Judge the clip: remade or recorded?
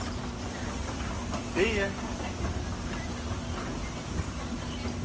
recorded